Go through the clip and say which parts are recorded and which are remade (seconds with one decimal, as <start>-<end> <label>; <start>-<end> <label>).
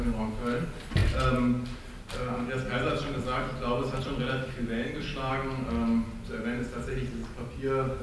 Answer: 0.0-8.0 recorded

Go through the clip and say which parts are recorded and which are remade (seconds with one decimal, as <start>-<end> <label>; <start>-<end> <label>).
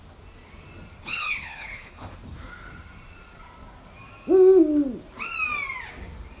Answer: 0.0-1.0 recorded; 1.0-2.1 remade; 2.1-6.4 recorded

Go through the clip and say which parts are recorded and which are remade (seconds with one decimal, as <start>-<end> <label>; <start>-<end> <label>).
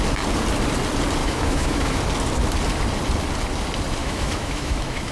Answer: 0.0-1.2 recorded; 1.2-2.0 remade; 2.0-4.0 recorded; 4.0-5.1 remade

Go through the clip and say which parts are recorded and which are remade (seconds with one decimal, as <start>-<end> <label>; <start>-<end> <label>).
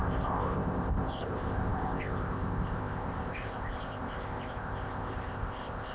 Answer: 0.0-5.9 remade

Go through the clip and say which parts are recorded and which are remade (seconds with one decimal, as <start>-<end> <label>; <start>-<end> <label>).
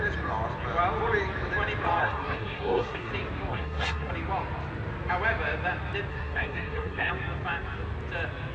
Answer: 0.0-2.0 recorded; 2.0-3.1 remade; 3.1-3.5 recorded; 3.5-4.1 remade; 4.1-6.1 recorded; 6.1-7.1 remade; 7.1-8.5 recorded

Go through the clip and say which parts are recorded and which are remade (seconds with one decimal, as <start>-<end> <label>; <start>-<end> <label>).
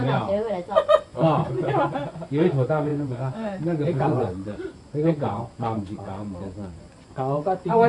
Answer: 0.0-7.9 remade